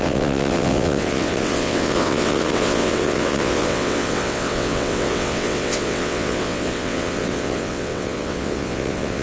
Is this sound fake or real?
fake